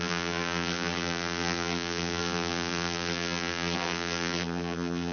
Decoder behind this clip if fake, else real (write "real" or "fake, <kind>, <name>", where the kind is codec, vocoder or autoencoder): fake, vocoder, BigVGAN v2